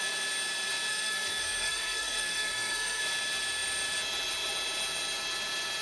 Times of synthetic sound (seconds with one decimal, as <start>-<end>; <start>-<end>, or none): 0.9-3.0